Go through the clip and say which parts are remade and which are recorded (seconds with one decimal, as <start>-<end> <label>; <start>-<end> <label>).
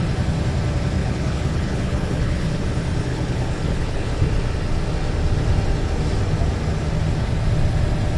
0.0-1.0 recorded; 1.0-2.6 remade; 2.6-3.1 recorded; 3.1-4.2 remade; 4.2-8.2 recorded